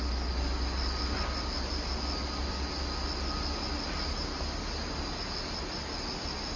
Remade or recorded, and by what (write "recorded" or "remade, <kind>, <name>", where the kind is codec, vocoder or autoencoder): recorded